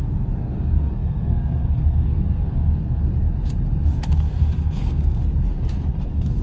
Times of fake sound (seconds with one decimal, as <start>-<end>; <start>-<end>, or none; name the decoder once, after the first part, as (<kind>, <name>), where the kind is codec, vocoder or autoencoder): 0.0-3.1 (codec, SNAC); 3.8-5.3; 6.0-6.4

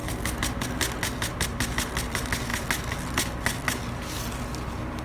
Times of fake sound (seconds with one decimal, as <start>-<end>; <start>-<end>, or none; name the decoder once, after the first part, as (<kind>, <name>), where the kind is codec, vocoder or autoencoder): none

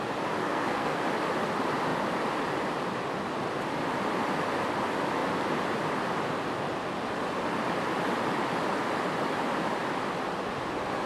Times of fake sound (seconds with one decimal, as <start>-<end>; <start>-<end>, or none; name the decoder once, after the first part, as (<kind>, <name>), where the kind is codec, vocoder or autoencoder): 0.4-1.0 (codec, SNAC)

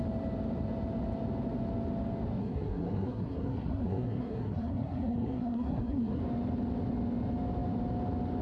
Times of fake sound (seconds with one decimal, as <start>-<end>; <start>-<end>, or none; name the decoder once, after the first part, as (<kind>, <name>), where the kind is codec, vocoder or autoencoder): 2.4-6.2 (codec, SNAC)

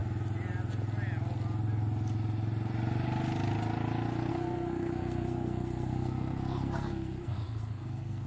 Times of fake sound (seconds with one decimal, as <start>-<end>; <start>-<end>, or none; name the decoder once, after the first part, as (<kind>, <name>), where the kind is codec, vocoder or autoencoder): 4.3-8.3 (codec, SNAC)

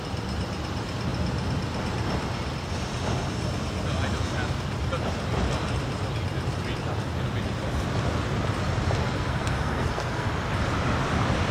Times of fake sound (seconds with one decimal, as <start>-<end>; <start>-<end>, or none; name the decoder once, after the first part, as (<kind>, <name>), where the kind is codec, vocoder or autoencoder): 9.0-10.3 (codec, SNAC)

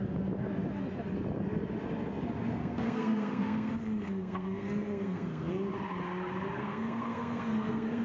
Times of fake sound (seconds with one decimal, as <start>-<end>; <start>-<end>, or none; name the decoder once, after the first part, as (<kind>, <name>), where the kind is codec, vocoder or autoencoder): 2.6-5.5 (codec, SNAC); 6.6-8.0